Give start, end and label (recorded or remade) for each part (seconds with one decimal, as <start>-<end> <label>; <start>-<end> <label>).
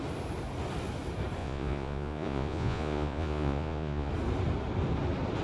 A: 0.0-1.4 recorded; 1.4-4.1 remade; 4.1-5.4 recorded